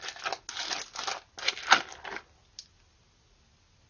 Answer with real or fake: real